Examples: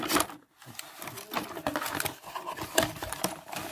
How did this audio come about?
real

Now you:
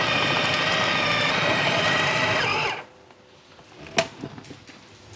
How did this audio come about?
real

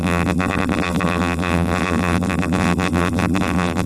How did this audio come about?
fake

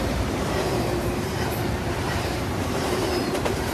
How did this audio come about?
fake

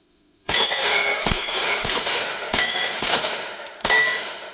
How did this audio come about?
fake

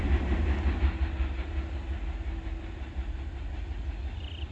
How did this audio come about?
real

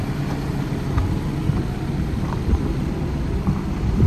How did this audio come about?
real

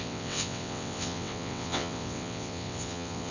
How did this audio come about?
fake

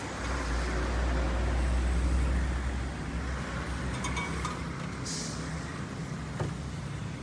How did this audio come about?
real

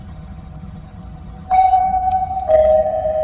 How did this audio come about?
fake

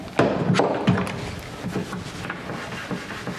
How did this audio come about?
real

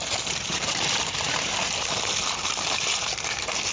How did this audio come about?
fake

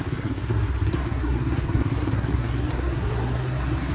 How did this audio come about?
fake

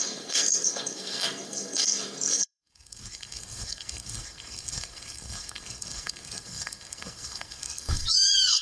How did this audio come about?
fake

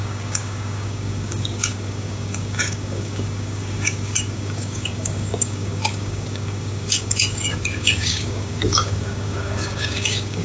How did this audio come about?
fake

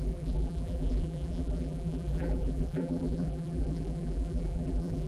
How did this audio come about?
fake